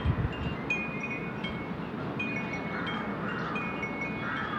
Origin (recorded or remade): recorded